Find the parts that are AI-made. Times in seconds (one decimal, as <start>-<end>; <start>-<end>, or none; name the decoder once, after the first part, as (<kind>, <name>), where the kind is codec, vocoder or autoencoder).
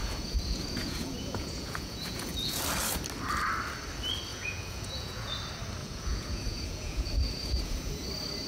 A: 0.0-2.6 (vocoder, Vocos); 4.3-5.3; 5.8-8.1